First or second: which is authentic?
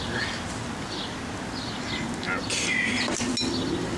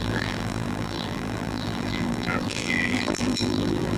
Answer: first